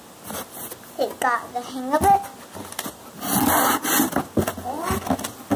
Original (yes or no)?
yes